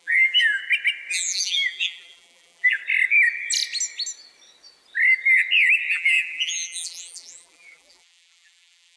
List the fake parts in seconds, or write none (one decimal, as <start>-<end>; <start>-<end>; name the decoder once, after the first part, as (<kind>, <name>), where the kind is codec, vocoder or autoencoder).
0.0-0.6 (vocoder, BigVGAN v2); 1.1-2.8; 5.9-9.0